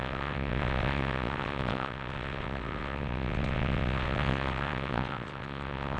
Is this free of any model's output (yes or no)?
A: no